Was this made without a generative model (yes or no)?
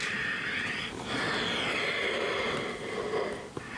yes